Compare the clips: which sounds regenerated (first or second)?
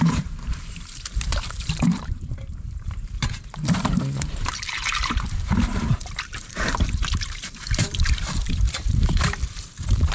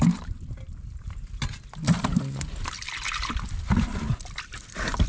first